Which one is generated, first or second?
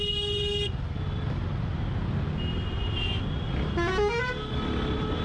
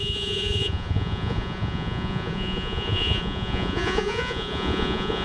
second